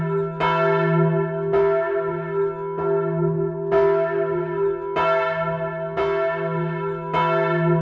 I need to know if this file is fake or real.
real